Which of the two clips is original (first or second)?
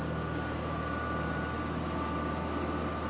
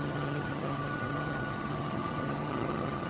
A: first